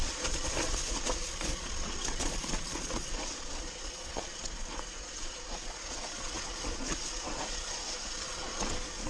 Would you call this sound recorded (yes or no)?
no